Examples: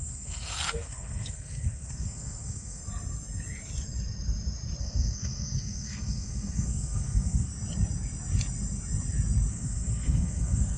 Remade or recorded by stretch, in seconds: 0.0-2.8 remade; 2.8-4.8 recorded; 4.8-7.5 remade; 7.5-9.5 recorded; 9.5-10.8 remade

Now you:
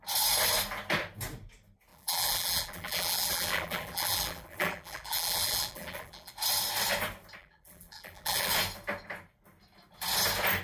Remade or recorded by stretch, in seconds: 0.0-1.9 recorded; 1.9-6.3 remade; 6.3-7.4 recorded; 7.4-8.5 remade; 8.5-10.6 recorded

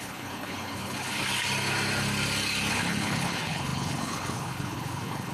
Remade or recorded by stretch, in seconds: 0.0-1.2 remade; 1.2-2.7 recorded; 2.7-5.3 remade